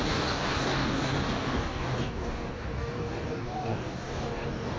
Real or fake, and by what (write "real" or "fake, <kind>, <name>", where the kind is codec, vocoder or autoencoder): fake, codec, DAC